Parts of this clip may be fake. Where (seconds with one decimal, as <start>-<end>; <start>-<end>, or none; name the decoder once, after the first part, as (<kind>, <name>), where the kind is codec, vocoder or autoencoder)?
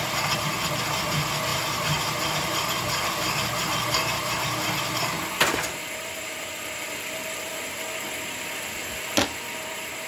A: 1.5-3.1 (vocoder, BigVGAN v2); 5.5-7.5; 8.8-9.7